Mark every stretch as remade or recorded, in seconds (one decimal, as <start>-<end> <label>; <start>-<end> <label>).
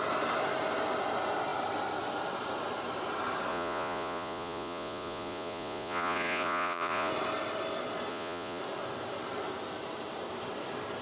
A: 0.0-3.5 recorded; 3.5-7.1 remade; 7.1-8.1 recorded; 8.1-8.6 remade; 8.6-11.0 recorded